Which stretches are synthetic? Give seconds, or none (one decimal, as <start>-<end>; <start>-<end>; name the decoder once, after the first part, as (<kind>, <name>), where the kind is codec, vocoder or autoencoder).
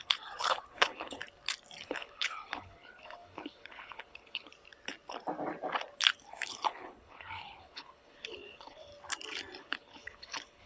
0.0-1.2 (codec, HILCodec); 1.8-4.5; 6.3-8.9; 9.6-10.7